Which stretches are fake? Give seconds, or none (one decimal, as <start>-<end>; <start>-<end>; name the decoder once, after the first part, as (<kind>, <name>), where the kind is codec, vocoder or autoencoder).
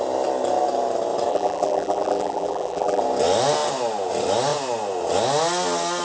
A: 1.3-3.0 (vocoder, BigVGAN v2)